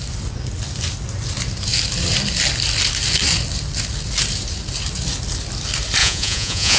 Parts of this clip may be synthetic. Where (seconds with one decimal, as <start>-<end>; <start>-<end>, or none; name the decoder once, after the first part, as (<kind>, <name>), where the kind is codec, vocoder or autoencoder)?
6.0-6.8 (vocoder, Vocos)

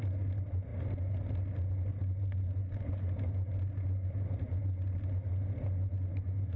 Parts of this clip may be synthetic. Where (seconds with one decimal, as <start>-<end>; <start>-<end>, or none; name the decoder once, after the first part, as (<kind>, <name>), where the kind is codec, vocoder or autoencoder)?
none

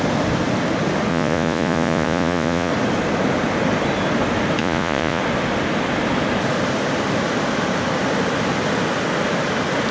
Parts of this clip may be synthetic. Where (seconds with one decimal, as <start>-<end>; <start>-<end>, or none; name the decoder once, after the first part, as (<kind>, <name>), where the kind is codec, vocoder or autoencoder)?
1.1-2.7 (vocoder, Vocos); 4.6-5.2

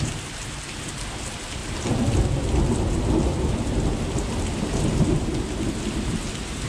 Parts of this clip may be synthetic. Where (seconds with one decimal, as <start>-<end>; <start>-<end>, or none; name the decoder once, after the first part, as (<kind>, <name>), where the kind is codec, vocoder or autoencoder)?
none

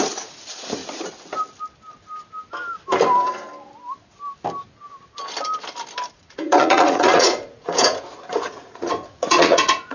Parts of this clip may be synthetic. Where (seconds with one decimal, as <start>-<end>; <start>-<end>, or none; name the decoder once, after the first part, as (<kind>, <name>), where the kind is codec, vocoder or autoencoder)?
0.0-0.8 (vocoder, Vocos); 6.1-9.9

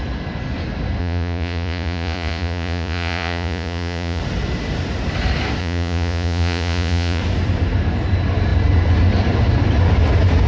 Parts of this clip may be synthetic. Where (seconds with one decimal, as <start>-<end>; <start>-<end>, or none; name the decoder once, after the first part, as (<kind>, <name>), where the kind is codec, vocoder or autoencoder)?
1.0-4.2 (vocoder, Vocos); 5.6-7.2